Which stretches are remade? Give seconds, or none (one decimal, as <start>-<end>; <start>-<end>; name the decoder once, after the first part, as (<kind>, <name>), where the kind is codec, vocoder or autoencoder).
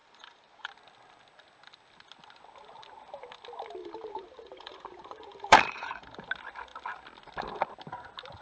0.0-0.7 (vocoder, BigVGAN v2); 3.8-6.3